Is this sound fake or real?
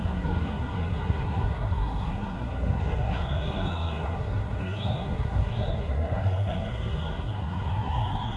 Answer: fake